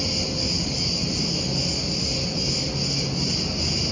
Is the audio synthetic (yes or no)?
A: no